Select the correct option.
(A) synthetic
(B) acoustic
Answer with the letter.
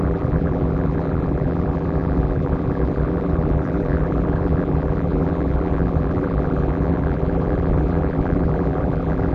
A